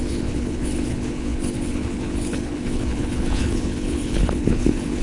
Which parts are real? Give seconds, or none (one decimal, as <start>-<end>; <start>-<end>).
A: none